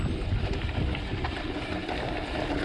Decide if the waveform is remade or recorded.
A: recorded